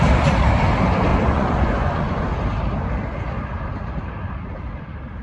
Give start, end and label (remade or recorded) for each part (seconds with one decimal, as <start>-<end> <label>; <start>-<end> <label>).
0.0-1.1 recorded; 1.1-2.4 remade; 2.4-5.2 recorded